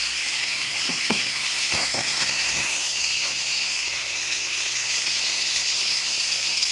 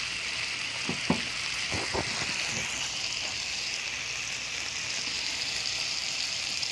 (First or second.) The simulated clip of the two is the first